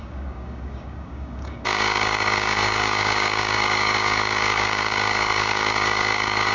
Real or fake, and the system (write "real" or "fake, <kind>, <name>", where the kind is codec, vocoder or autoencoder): fake, codec, DAC